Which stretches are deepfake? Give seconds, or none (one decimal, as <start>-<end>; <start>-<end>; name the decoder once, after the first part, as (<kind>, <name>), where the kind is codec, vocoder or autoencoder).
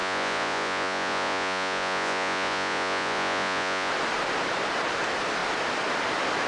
0.0-3.9 (vocoder, Vocos)